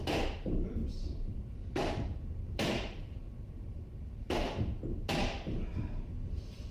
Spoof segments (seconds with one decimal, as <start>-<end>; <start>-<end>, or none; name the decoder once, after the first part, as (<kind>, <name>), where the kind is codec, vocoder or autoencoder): 0.8-4.8 (vocoder, BigVGAN v2)